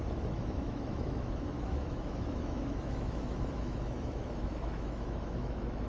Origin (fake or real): fake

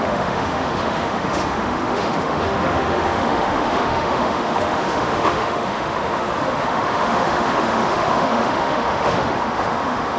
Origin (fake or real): fake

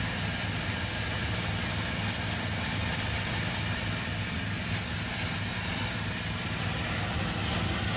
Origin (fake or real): real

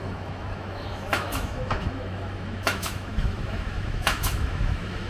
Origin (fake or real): fake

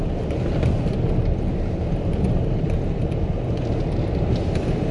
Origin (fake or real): real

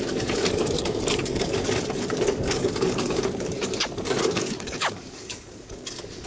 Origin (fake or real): fake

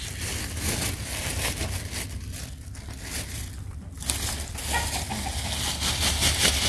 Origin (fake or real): real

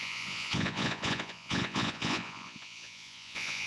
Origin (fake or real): fake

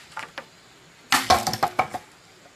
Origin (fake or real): real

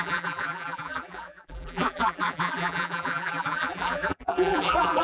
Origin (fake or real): fake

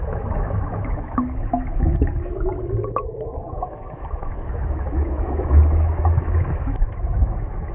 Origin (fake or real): fake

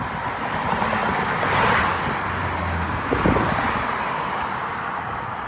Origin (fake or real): real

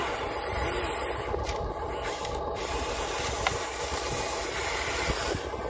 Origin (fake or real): real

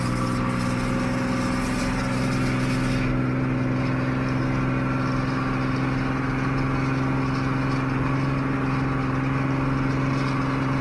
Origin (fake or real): real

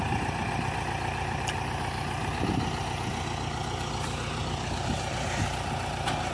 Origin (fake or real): real